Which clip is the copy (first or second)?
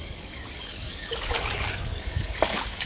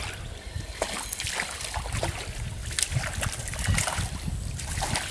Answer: first